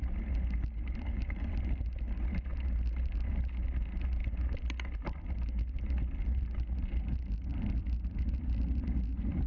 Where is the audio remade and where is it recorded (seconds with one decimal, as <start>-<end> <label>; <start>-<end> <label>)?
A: 0.0-9.5 recorded